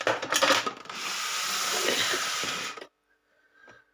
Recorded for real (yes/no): yes